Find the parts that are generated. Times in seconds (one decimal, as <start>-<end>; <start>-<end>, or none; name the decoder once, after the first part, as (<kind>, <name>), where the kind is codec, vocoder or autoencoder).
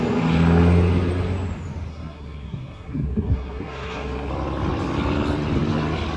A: 1.9-4.3 (codec, SNAC)